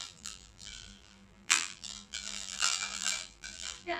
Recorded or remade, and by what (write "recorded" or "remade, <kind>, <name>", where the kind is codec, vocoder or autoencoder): remade, vocoder, BigVGAN v2